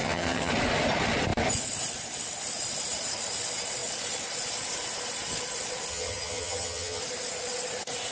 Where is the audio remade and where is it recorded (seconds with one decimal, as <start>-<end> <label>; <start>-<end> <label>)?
0.0-0.5 remade; 0.5-5.9 recorded; 5.9-7.0 remade; 7.0-8.1 recorded